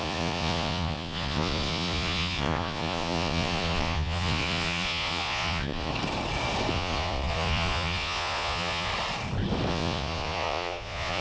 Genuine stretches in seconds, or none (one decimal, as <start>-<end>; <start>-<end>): 5.9-6.7; 8.9-9.7